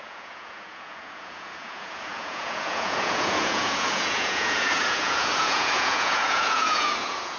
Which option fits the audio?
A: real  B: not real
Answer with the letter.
B